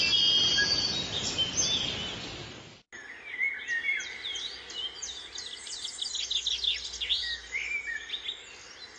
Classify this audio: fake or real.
real